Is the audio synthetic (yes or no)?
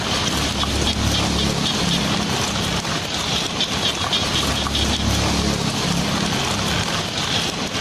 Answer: no